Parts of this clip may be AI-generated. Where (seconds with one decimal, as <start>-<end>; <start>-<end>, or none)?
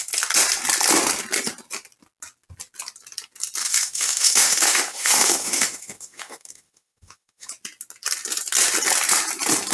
3.6-7.5